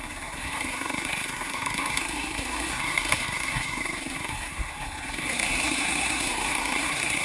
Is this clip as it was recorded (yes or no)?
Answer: no